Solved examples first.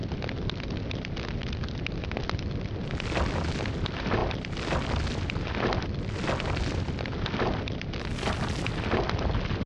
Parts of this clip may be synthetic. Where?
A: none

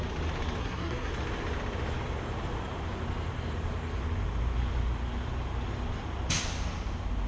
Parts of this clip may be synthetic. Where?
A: 0.6-1.1

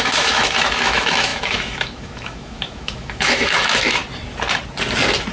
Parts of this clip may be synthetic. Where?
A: 0.0-4.0

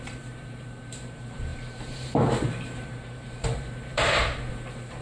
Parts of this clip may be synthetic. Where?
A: 0.0-5.0